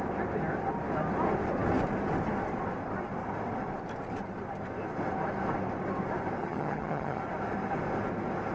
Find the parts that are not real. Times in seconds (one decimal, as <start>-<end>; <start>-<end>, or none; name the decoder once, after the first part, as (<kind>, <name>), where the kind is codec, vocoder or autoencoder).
6.4-7.2 (vocoder, HiFi-GAN)